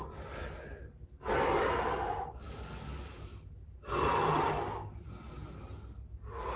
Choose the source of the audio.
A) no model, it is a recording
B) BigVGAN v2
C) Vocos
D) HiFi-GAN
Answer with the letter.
A